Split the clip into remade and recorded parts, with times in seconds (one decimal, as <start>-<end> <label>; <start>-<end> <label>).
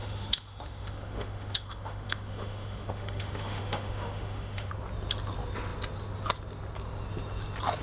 0.0-4.7 remade; 4.7-7.8 recorded